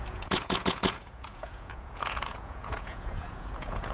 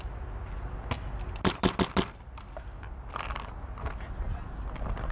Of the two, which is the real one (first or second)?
second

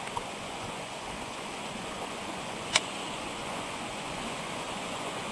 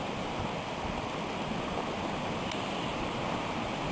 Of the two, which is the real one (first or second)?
second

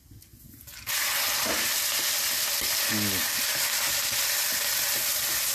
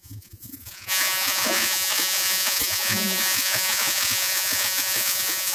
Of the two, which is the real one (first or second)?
first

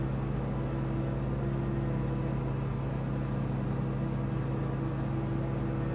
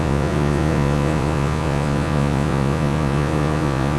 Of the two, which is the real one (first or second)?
first